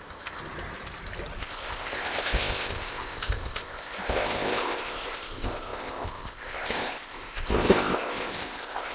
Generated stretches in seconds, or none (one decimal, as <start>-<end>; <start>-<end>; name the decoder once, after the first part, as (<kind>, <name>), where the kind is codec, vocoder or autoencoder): 0.0-0.4 (codec, ZipCodec); 1.4-8.9